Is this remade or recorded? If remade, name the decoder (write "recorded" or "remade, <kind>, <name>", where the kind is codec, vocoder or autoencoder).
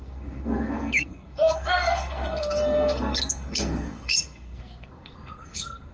remade, codec, SNAC